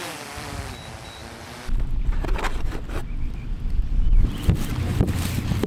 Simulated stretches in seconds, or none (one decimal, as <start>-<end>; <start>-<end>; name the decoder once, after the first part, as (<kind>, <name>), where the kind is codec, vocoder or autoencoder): 0.0-5.7 (vocoder, BigVGAN v2)